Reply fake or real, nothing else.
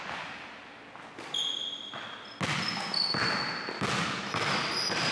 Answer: real